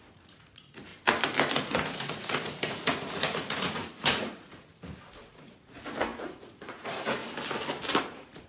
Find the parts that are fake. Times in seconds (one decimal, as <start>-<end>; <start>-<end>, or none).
0.0-0.9; 1.7-4.7; 5.2-7.2; 8.0-8.5